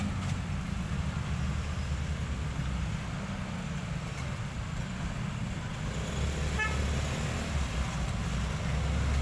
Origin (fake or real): real